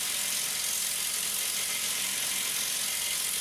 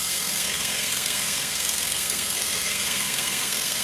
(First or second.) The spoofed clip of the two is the second